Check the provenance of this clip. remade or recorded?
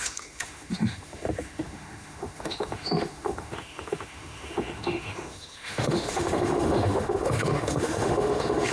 remade